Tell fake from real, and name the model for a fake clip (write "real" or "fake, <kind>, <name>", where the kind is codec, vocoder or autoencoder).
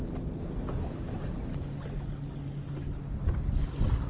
real